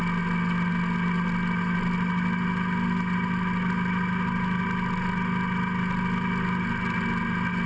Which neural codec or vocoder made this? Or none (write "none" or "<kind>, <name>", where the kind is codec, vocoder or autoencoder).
none